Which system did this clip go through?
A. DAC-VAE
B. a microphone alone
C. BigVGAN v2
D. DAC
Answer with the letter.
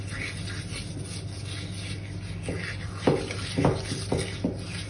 B